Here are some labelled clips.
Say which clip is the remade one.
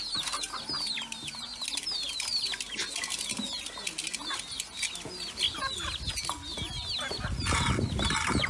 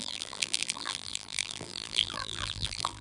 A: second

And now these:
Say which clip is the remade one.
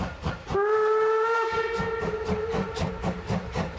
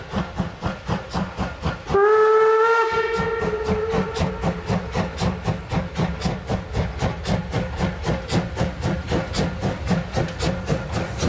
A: first